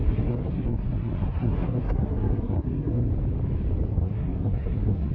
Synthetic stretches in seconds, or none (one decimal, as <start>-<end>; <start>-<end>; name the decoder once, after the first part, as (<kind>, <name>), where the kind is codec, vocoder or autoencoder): 0.0-3.1 (codec, SNAC); 3.9-5.1